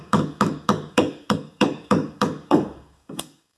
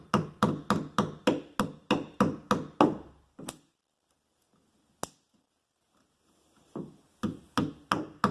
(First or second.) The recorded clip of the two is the second